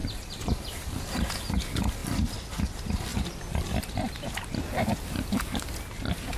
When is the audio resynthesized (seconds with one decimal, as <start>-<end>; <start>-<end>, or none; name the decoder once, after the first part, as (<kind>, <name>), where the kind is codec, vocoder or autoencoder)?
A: 0.0-1.4 (vocoder, BigVGAN v2); 2.0-2.6